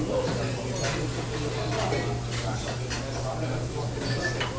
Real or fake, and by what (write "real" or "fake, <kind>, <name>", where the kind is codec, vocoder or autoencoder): real